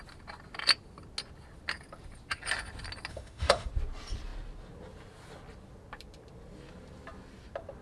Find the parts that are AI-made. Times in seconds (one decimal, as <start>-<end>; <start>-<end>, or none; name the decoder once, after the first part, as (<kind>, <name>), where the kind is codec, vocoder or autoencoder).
3.1-3.7 (autoencoder, DAC-VAE)